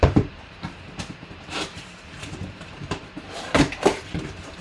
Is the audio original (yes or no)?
no